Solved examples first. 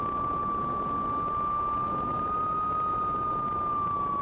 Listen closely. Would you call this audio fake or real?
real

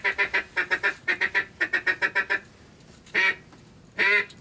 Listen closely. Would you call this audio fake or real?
real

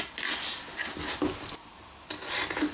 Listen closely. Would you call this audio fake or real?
real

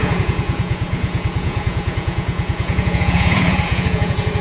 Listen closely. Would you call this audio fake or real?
fake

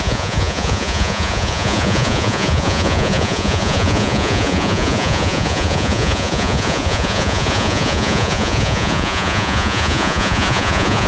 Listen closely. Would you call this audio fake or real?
fake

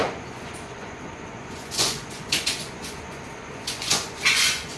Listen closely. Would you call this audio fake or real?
fake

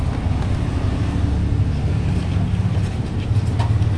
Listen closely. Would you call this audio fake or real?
real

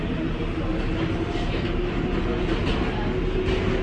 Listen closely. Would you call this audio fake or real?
real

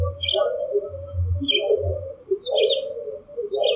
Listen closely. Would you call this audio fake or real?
real